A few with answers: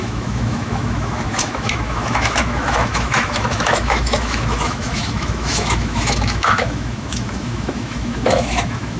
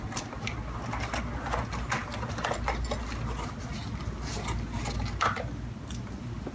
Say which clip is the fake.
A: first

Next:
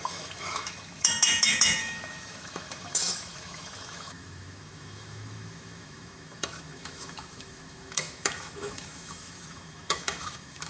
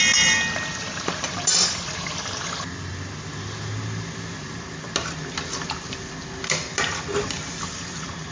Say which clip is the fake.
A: first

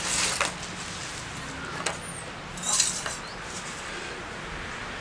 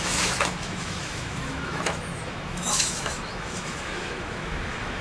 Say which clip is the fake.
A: second